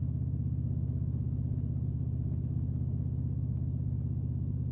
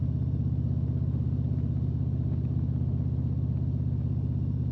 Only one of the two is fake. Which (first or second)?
first